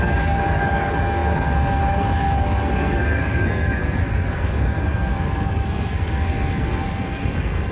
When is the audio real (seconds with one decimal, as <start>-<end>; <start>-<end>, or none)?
none